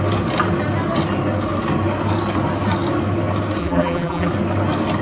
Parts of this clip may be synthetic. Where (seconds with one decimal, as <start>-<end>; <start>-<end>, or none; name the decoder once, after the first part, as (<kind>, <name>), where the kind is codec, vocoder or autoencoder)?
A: 3.6-4.3 (vocoder, BigVGAN v2)